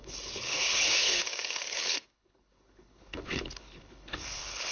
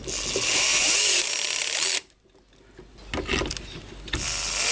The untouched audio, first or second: second